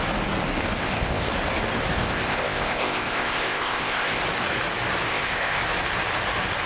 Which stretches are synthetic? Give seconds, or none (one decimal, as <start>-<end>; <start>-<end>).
0.8-1.3; 1.9-4.2; 5.1-5.6